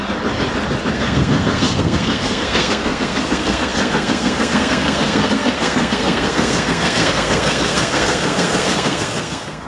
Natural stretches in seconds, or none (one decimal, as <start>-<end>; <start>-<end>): 0.0-0.9